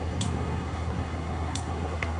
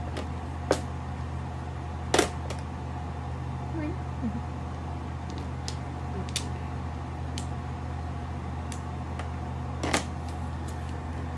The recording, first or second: second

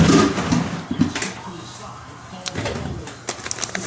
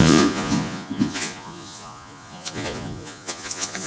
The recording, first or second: first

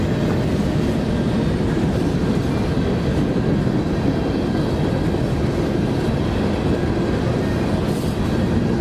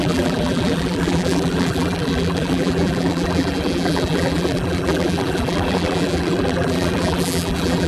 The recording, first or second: first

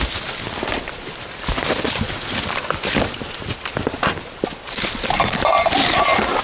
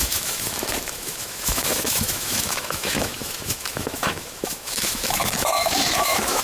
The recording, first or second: first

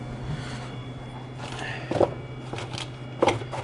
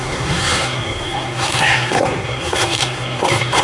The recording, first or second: first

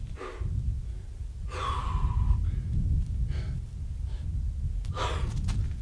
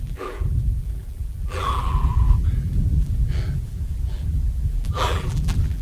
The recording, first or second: first